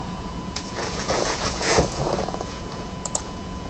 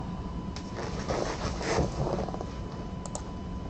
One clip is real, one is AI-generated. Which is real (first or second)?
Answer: second